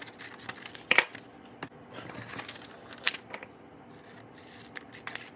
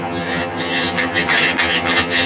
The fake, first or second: second